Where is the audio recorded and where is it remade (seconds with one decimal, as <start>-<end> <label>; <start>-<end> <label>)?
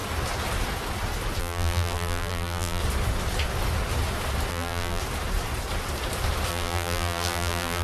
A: 0.0-1.4 recorded; 1.4-2.8 remade; 2.8-4.5 recorded; 4.5-5.0 remade; 5.0-6.5 recorded; 6.5-7.8 remade